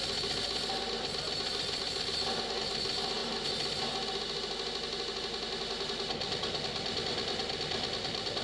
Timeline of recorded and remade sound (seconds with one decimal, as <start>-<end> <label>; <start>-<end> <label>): 0.0-8.4 recorded